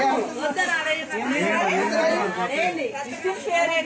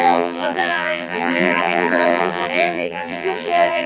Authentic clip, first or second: first